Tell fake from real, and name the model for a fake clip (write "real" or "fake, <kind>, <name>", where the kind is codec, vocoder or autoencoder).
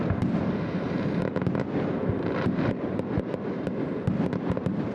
real